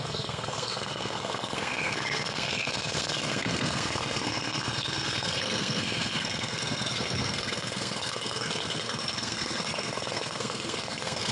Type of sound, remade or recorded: remade